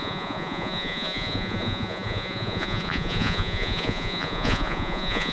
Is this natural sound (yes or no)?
no